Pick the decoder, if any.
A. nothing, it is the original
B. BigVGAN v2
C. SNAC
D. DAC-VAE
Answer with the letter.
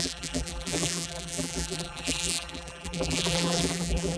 B